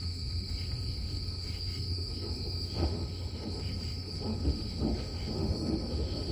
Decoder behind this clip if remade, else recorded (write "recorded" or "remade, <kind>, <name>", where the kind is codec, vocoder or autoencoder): remade, autoencoder, DAC-VAE